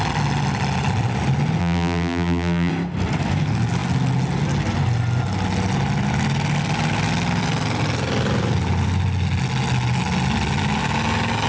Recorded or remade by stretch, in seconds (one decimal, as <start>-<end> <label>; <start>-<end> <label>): 0.0-1.6 recorded; 1.6-2.7 remade; 2.7-11.5 recorded